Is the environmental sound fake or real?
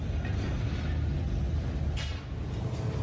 real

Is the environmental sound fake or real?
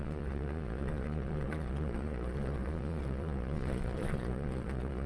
fake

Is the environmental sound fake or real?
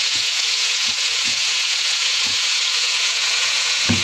fake